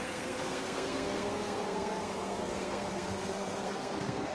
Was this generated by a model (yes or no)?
yes